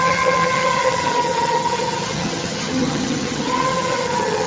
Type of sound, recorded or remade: remade